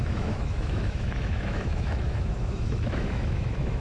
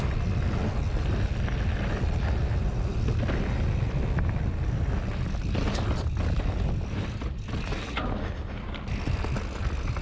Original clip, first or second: second